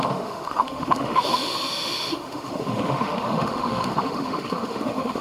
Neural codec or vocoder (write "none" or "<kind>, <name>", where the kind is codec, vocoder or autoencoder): autoencoder, DAC-VAE